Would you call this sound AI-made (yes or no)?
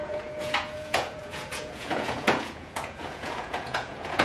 yes